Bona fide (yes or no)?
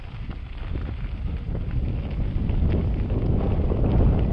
yes